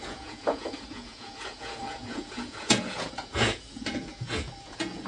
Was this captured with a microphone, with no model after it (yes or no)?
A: no